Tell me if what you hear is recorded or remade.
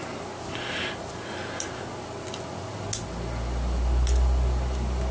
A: recorded